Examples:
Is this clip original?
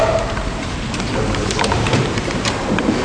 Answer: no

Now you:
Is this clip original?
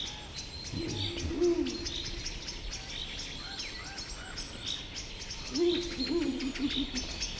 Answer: yes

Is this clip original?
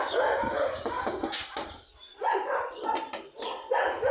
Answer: yes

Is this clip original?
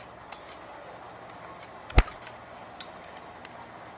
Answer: yes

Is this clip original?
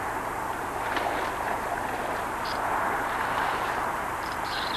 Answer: no